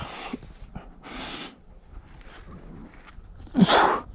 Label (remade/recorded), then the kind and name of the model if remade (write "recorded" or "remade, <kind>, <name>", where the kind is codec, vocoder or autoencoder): recorded